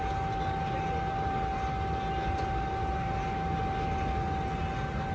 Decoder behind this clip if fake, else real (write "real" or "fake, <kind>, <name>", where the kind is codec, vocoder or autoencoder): real